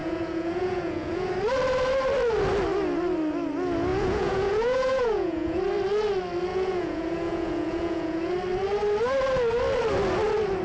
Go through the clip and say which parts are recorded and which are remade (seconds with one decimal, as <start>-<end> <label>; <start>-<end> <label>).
0.0-1.3 remade; 1.3-3.9 recorded; 3.9-5.6 remade; 5.6-6.5 recorded; 6.5-8.3 remade; 8.3-10.6 recorded